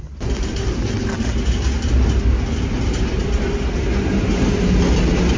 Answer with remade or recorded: recorded